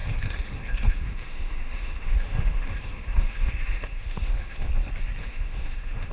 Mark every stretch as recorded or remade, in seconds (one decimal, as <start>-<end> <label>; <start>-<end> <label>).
0.0-4.7 remade; 4.7-5.2 recorded; 5.2-6.1 remade